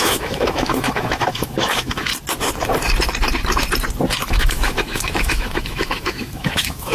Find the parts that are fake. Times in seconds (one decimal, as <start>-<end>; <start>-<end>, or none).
0.0-2.1; 4.3-6.9